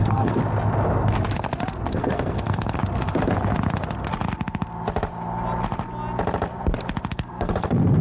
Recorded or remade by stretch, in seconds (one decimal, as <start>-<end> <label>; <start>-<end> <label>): 0.0-0.4 remade; 0.4-1.9 recorded; 1.9-2.8 remade; 2.8-7.1 recorded; 7.1-8.0 remade